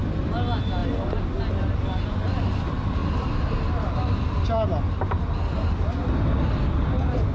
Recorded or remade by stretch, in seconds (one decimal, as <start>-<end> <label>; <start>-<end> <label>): 0.0-7.3 recorded